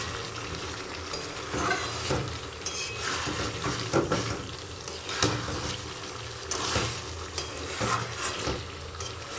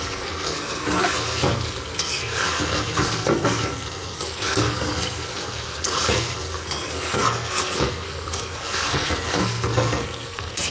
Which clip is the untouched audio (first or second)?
first